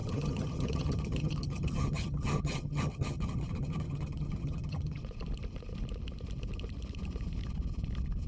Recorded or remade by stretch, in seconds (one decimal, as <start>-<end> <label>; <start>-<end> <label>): 0.0-5.0 remade; 5.0-8.3 recorded